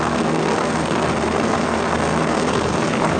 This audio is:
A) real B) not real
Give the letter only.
B